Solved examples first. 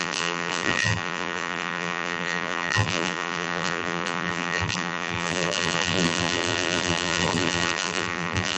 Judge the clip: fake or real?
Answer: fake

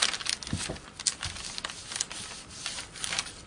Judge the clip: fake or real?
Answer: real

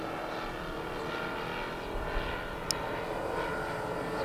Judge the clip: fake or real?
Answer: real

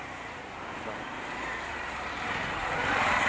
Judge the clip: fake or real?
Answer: real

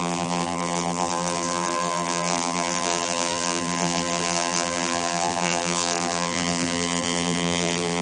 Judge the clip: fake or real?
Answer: fake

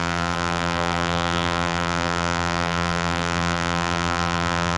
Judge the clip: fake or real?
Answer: fake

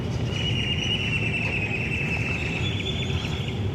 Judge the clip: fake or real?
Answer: real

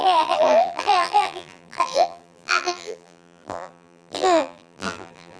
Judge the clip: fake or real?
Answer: fake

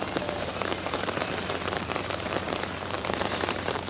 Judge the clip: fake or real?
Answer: fake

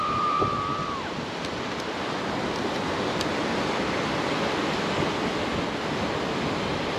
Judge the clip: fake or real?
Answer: real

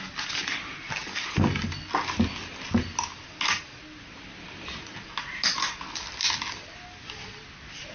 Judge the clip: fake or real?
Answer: real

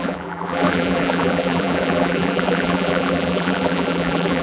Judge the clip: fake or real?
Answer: fake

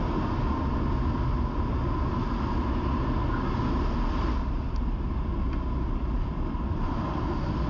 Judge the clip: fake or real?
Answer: real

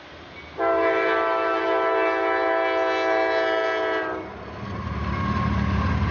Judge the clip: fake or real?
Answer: real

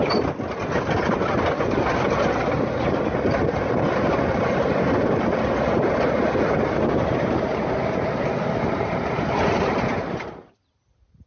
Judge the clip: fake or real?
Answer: real